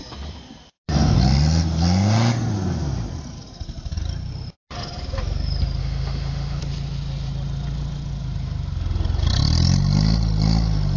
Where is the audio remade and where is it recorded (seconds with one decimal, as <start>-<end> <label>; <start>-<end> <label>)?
0.0-5.8 recorded; 5.8-6.6 remade; 6.6-11.0 recorded